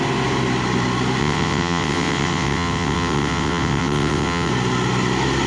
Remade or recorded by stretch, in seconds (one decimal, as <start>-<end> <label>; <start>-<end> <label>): 0.0-1.2 recorded; 1.2-4.5 remade; 4.5-5.5 recorded